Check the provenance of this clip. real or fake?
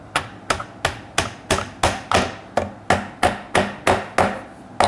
real